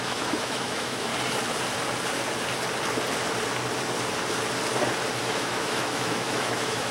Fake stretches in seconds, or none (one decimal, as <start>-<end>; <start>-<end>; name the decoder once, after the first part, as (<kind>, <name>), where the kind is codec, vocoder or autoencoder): 0.0-1.1 (autoencoder, DAC-VAE); 5.2-6.9